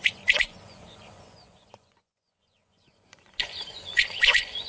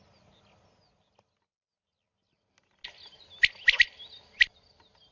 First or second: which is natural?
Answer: second